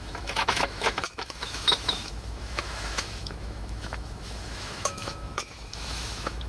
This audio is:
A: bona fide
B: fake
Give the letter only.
B